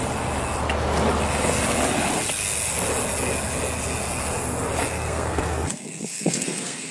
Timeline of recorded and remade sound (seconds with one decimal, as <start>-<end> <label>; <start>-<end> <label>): 0.0-4.8 recorded; 4.8-6.9 remade